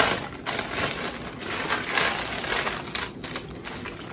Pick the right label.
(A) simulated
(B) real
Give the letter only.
B